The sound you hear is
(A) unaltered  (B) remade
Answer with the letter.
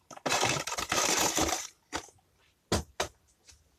A